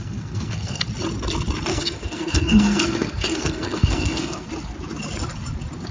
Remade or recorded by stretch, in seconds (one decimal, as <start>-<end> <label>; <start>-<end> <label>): 0.0-0.8 remade; 0.8-1.7 recorded; 1.7-4.5 remade; 4.5-5.9 recorded

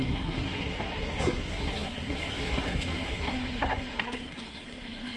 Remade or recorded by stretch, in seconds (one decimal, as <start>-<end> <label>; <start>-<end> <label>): 0.0-5.2 remade

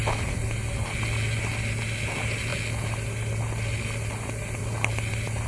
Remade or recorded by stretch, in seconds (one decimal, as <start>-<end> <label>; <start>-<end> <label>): 0.0-5.5 recorded

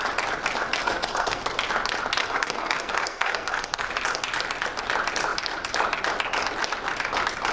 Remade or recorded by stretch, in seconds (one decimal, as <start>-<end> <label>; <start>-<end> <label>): 0.0-0.8 recorded; 0.8-1.4 remade; 1.4-2.2 recorded; 2.2-3.9 remade; 3.9-7.5 recorded

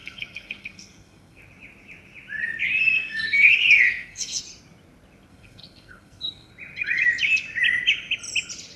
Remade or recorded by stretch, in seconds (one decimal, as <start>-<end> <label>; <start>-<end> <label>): 0.0-1.4 remade; 1.4-2.8 recorded; 2.8-4.4 remade; 4.4-5.3 recorded; 5.3-6.5 remade; 6.5-8.8 recorded

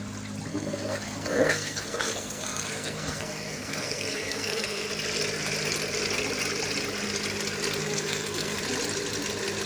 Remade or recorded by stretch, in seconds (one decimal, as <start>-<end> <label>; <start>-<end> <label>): 0.0-0.5 recorded; 0.5-4.9 remade; 4.9-7.8 recorded; 7.8-8.6 remade; 8.6-9.7 recorded

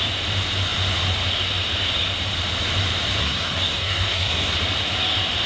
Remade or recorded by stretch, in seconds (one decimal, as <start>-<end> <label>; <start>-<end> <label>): 0.0-3.2 recorded; 3.2-4.5 remade; 4.5-5.5 recorded